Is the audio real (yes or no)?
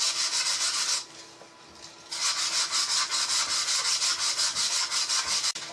yes